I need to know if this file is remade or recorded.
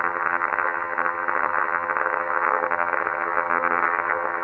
remade